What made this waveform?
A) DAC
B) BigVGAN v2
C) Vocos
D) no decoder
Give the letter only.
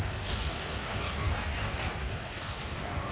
A